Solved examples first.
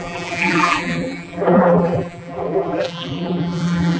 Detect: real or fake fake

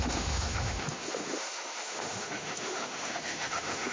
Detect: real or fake fake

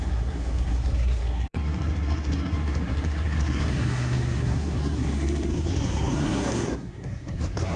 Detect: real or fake fake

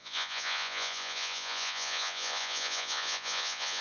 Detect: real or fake fake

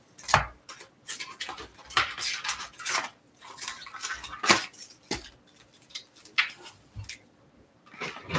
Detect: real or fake real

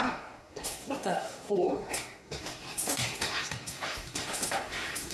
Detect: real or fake fake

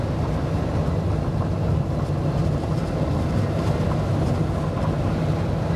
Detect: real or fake real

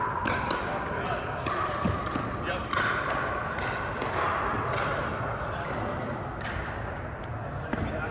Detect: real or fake real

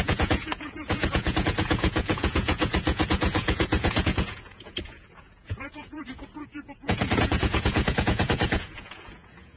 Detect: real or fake fake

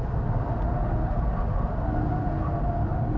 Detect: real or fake real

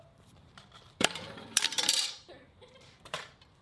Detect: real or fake fake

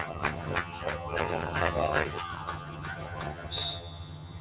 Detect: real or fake fake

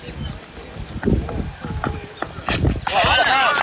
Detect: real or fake real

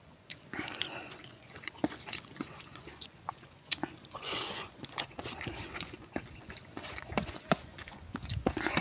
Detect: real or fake fake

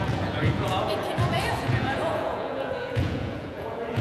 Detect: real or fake fake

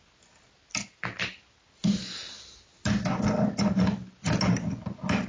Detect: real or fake real